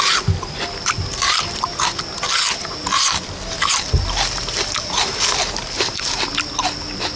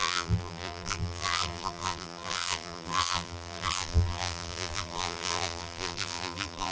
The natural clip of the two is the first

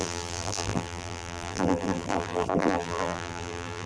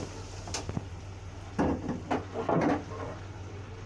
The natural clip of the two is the second